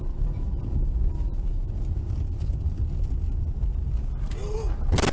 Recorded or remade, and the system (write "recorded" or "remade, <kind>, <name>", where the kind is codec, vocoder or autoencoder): recorded